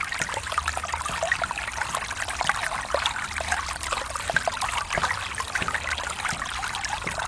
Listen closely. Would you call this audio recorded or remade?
recorded